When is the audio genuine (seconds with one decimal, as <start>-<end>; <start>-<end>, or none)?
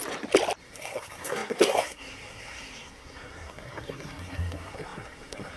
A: 0.0-0.6